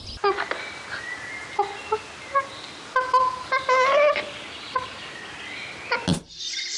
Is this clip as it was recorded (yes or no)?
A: yes